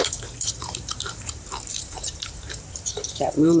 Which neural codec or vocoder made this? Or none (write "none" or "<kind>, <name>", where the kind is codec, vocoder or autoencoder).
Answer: vocoder, BigVGAN v2